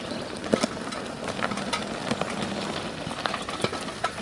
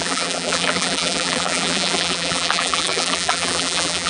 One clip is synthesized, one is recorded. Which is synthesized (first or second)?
second